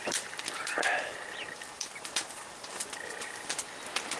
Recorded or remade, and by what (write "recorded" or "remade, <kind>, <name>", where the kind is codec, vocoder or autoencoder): recorded